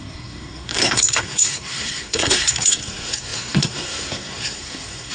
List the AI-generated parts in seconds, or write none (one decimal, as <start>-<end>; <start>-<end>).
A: 0.0-5.1